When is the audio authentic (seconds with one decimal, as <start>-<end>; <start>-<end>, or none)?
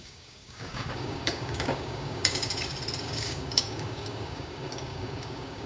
2.5-3.0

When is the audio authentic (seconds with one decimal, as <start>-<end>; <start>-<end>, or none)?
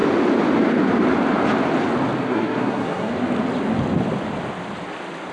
0.0-2.2; 3.1-5.3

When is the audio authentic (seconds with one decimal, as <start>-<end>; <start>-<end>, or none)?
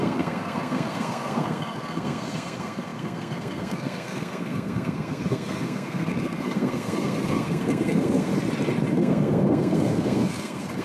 8.3-8.9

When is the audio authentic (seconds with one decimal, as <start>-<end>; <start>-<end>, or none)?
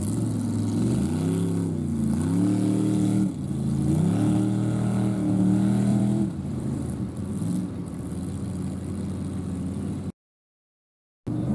0.0-5.9; 7.3-11.5